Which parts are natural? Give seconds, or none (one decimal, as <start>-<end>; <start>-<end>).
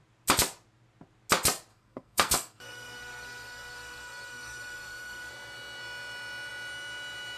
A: 0.0-1.7; 5.3-7.4